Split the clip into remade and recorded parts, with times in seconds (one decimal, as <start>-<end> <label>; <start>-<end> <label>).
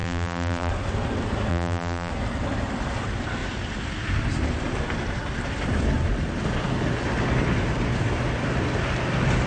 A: 0.0-0.7 remade; 0.7-1.5 recorded; 1.5-2.1 remade; 2.1-9.5 recorded